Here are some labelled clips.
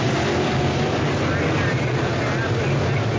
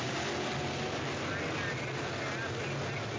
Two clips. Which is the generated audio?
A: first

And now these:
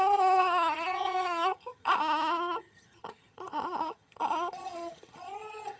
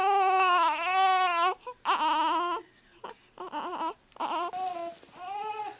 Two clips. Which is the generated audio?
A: first